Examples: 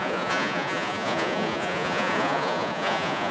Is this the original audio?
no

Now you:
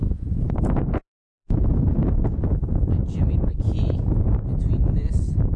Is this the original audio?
no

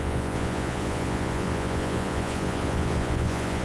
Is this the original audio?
no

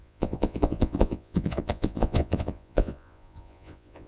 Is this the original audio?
no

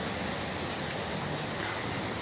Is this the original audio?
yes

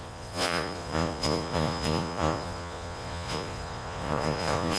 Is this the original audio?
no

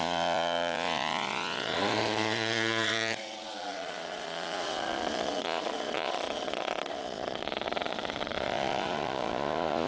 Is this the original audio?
no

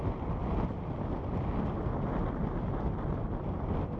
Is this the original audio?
yes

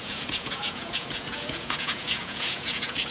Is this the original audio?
no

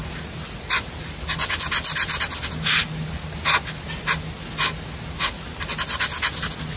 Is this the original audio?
yes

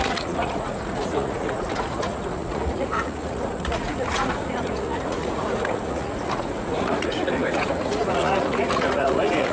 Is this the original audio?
no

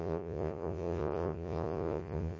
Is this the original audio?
no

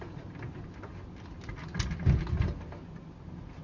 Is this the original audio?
yes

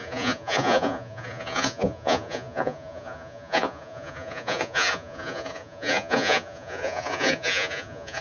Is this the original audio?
no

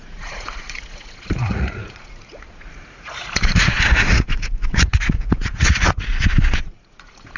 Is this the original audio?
no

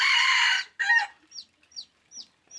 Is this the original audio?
yes